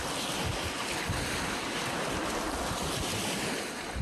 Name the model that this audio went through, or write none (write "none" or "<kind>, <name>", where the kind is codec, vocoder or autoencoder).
none